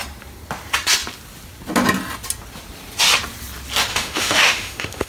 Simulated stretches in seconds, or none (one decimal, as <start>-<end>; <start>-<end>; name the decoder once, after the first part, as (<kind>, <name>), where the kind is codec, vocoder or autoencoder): 3.9-5.1 (autoencoder, DAC-VAE)